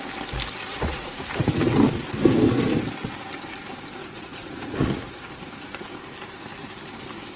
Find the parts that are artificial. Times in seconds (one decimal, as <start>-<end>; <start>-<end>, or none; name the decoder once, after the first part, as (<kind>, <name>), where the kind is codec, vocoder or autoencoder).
0.7-1.6 (vocoder, Vocos); 4.0-5.5